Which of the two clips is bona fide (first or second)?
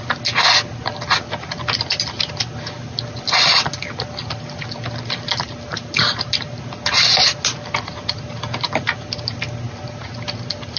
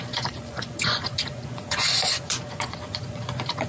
first